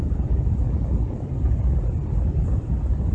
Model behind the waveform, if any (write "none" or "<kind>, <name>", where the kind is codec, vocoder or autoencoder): none